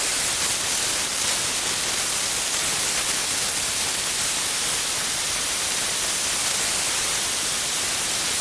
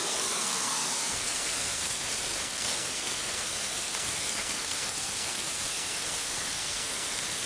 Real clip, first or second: first